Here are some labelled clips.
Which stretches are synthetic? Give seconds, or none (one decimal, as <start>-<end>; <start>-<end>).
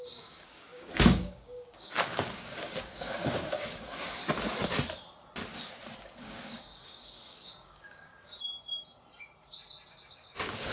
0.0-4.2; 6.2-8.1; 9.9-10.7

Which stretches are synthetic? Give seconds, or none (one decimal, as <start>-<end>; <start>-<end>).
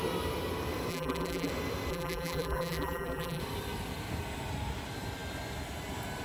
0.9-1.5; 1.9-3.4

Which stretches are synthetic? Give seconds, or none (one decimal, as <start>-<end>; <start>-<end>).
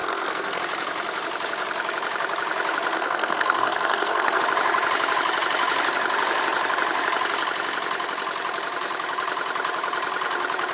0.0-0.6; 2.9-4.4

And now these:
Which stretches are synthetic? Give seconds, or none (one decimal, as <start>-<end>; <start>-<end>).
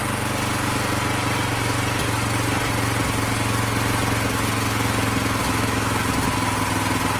5.4-6.0